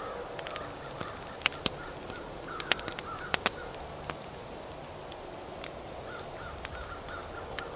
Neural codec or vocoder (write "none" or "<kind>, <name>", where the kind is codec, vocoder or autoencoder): none